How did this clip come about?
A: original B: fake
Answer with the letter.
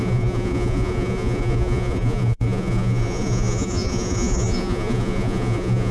B